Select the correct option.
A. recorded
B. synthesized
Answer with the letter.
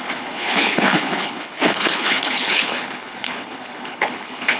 B